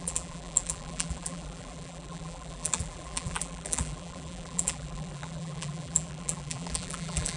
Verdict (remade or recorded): remade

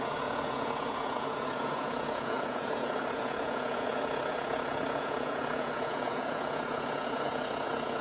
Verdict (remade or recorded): remade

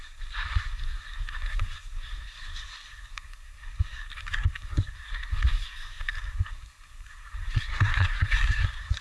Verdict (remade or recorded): remade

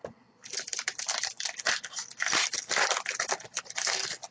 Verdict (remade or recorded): remade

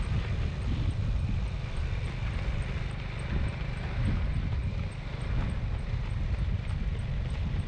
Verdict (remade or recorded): recorded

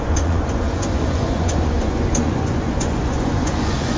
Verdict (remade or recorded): remade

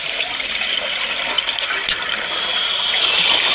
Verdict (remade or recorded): recorded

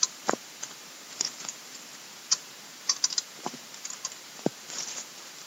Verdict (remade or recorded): remade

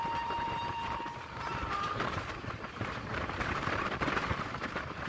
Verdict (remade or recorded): remade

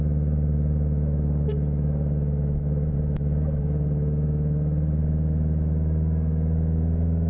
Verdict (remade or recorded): remade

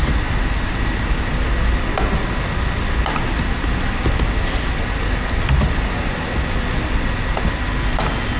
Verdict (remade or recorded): recorded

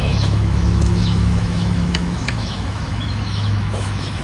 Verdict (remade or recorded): remade